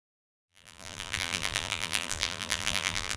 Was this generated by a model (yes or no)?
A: yes